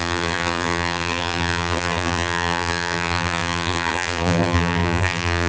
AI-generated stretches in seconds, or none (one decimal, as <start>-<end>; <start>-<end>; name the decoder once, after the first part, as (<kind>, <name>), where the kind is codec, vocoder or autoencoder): 0.0-5.5 (vocoder, BigVGAN v2)